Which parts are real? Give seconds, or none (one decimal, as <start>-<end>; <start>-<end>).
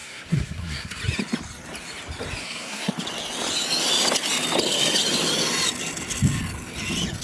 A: 1.0-2.4; 2.9-7.2